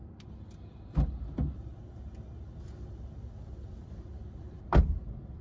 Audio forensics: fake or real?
real